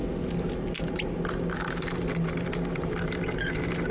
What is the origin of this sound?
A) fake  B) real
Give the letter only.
B